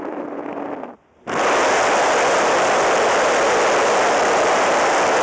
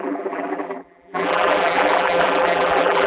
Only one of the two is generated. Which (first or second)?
second